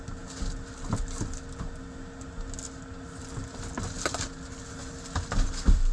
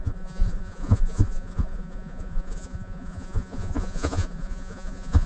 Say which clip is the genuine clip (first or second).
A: first